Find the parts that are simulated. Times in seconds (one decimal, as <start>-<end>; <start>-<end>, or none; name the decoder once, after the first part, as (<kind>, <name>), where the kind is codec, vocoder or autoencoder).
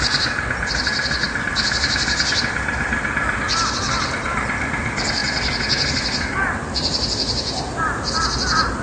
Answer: 0.0-5.2 (vocoder, BigVGAN v2); 6.7-8.8